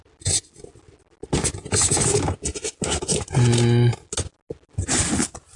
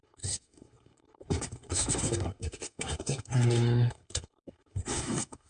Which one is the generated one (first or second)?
second